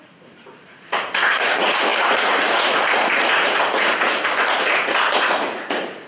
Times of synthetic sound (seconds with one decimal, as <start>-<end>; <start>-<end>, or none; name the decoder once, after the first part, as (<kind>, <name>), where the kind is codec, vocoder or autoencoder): 0.0-6.1 (vocoder, Vocos)